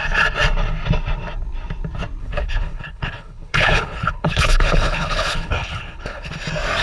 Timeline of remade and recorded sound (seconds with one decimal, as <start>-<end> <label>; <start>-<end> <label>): 0.0-2.2 recorded; 2.2-6.3 remade; 6.3-6.8 recorded